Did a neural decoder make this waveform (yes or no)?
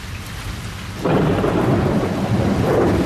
no